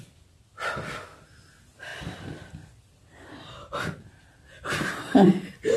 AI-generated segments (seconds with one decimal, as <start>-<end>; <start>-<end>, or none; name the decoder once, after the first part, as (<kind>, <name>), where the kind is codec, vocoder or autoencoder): none